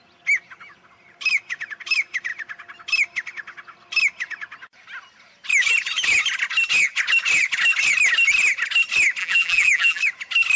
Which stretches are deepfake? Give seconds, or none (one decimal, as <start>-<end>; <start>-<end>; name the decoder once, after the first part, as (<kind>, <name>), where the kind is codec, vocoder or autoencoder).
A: 9.2-10.0 (vocoder, BigVGAN v2)